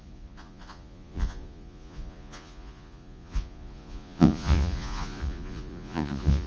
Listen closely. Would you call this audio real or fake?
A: fake